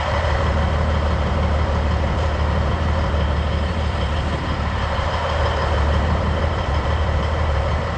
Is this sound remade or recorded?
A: remade